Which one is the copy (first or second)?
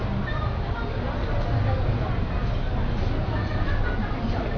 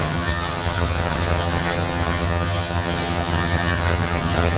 second